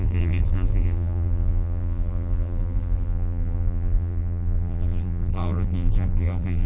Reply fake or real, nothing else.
fake